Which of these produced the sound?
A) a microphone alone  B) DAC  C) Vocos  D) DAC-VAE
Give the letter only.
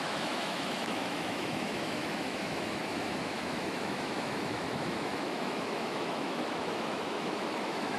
D